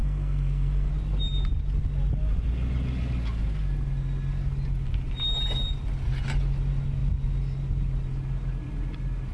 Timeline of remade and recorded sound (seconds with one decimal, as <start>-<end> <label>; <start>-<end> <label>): 0.0-0.9 remade; 0.9-9.3 recorded